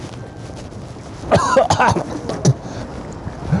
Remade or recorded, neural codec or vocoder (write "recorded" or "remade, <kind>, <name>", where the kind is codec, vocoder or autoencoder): recorded